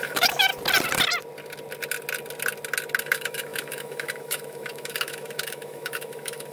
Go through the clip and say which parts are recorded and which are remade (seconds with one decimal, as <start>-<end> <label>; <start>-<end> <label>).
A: 0.0-0.5 remade; 0.5-3.0 recorded; 3.0-6.5 remade